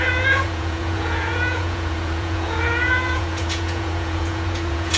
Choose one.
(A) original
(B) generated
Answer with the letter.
B